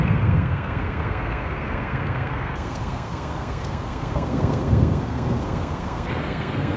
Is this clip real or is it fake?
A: fake